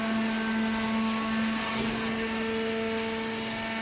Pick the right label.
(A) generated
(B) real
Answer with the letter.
B